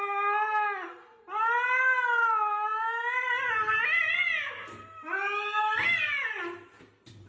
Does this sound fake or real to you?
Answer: real